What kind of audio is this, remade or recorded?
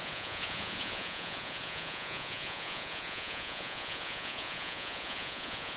remade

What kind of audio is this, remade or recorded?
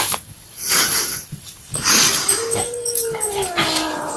remade